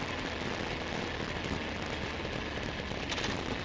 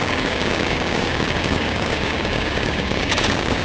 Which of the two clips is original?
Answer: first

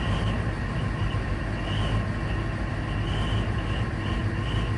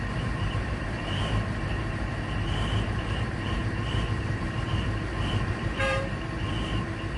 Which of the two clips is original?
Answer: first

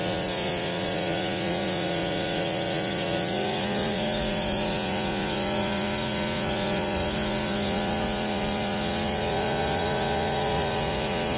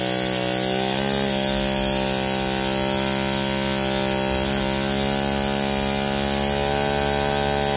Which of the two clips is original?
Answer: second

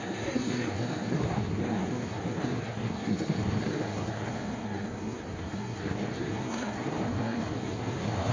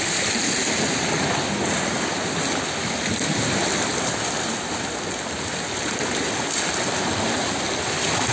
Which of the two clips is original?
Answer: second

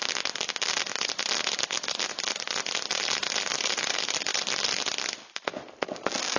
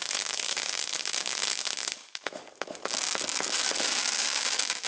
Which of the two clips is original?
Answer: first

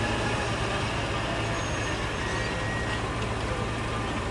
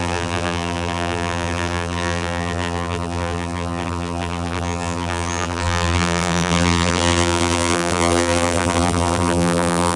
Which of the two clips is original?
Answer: first